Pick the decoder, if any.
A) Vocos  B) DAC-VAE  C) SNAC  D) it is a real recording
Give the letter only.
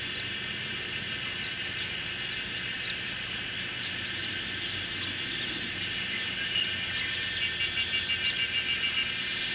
D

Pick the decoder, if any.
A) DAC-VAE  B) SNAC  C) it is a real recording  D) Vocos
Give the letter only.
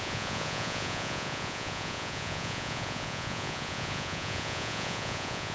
D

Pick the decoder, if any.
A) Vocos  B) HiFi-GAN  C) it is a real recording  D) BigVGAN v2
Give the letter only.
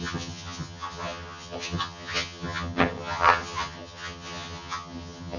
B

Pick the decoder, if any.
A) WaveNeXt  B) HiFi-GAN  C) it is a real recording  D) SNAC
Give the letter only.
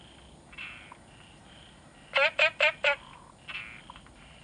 C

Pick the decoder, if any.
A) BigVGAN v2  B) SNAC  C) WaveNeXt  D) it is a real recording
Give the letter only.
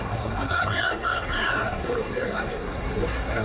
B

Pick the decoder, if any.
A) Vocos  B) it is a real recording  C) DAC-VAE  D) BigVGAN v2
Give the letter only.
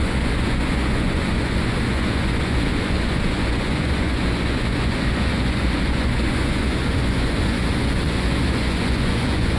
A